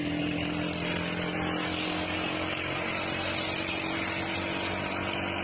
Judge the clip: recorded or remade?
recorded